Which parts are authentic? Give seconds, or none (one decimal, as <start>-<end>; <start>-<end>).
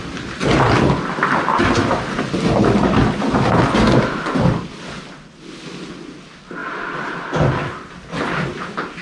0.0-9.0